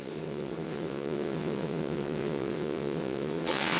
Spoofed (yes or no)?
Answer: yes